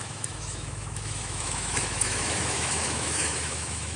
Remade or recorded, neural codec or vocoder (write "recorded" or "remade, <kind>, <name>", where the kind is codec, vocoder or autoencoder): remade, autoencoder, DAC-VAE